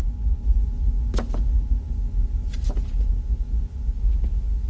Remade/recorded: recorded